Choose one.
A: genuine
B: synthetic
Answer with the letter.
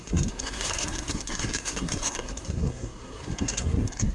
B